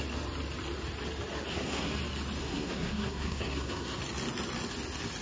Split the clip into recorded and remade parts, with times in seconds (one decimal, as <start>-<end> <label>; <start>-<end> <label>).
0.0-1.5 recorded; 1.5-2.0 remade; 2.0-2.4 recorded; 2.4-4.0 remade; 4.0-5.2 recorded